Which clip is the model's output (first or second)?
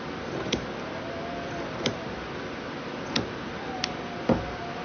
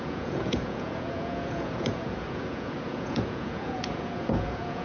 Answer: second